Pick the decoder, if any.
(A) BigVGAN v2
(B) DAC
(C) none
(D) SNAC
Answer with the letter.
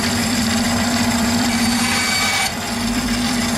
A